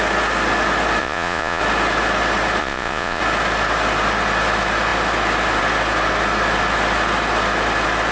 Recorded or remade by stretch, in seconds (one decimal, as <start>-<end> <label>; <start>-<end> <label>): 0.0-1.0 recorded; 1.0-1.6 remade; 1.6-2.6 recorded; 2.6-3.2 remade; 3.2-8.1 recorded